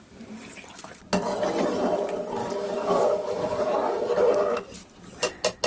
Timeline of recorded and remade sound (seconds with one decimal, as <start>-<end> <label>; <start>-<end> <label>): 0.0-2.4 recorded; 2.4-4.1 remade; 4.1-5.7 recorded